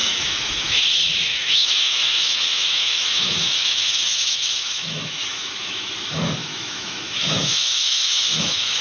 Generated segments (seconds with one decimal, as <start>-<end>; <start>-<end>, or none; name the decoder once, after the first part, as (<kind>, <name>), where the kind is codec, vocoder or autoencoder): 0.0-0.8 (autoencoder, DAC-VAE); 1.3-5.9; 6.4-8.8